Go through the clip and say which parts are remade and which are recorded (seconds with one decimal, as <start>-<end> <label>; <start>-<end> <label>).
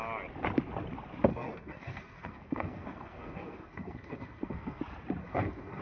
0.0-1.3 recorded; 1.3-4.8 remade; 4.8-5.2 recorded; 5.2-5.8 remade